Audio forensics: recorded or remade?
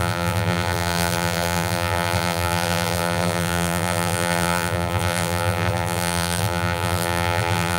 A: remade